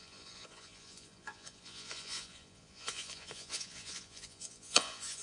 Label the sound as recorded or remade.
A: remade